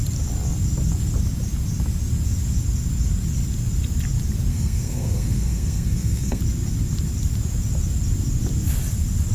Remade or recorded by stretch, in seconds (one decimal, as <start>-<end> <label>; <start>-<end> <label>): 0.0-4.5 recorded; 4.5-6.4 remade; 6.4-9.3 recorded